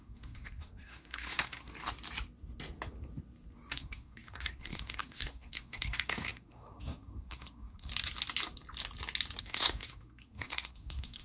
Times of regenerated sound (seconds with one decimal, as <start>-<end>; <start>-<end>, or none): 0.0-1.7; 3.7-7.9; 9.4-11.2